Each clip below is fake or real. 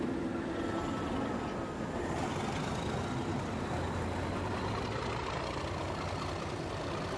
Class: real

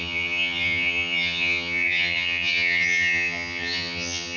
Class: fake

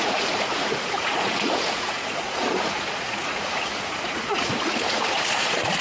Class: fake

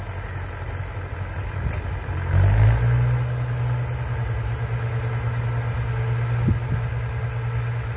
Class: real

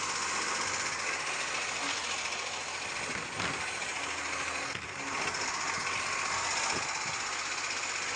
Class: real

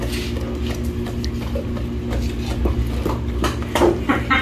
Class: real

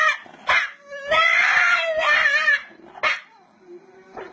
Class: real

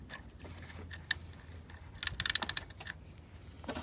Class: real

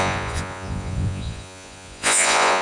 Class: fake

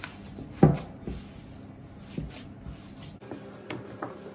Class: real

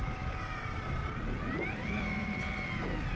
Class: fake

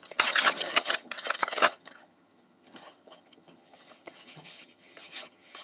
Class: fake